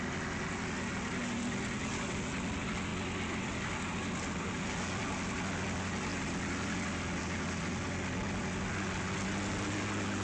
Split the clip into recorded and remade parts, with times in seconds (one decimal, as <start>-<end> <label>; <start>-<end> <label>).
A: 0.0-10.2 recorded